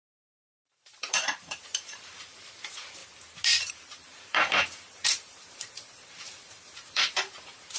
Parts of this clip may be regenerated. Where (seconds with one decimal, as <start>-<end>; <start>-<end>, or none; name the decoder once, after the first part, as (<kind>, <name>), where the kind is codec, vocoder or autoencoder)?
0.0-3.0 (vocoder, BigVGAN v2); 3.7-7.8